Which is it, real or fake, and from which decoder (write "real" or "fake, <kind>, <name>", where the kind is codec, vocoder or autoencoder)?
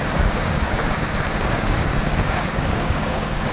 fake, codec, DAC